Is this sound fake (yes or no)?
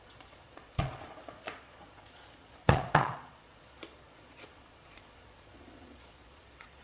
yes